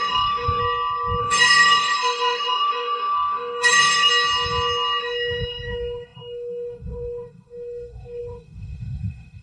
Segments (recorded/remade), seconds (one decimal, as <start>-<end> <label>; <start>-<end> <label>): 0.0-0.6 remade; 0.6-1.2 recorded; 1.2-4.1 remade; 4.1-5.0 recorded; 5.0-9.4 remade